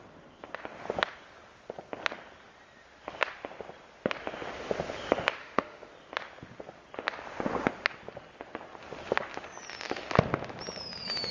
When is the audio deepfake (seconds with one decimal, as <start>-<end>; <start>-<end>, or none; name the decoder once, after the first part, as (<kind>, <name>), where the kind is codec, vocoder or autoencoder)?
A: 5.4-5.9 (autoencoder, DAC-VAE)